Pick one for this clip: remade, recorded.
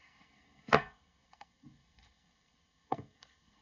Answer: remade